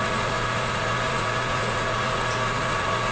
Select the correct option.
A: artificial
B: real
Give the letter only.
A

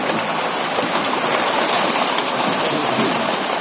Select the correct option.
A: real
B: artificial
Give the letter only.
A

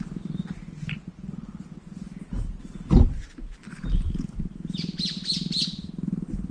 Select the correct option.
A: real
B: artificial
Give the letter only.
A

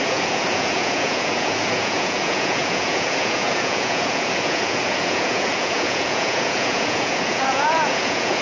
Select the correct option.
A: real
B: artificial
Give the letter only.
B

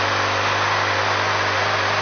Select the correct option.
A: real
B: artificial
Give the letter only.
A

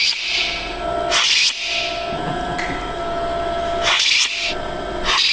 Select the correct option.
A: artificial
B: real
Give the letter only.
B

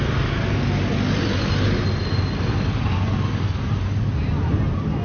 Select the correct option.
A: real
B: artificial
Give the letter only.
A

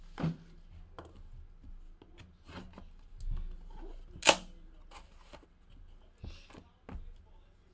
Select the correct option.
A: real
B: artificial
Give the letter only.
A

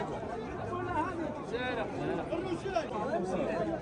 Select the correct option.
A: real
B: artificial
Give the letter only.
A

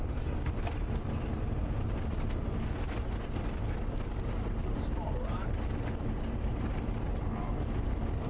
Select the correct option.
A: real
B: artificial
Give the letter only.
A